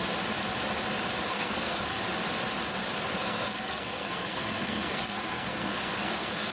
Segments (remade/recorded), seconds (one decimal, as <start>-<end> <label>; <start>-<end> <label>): 0.0-1.3 recorded; 1.3-2.0 remade; 2.0-3.2 recorded; 3.2-6.5 remade